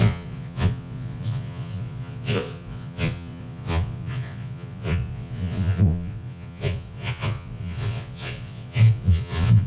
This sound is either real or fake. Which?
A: fake